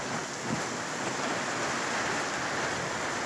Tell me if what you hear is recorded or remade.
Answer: recorded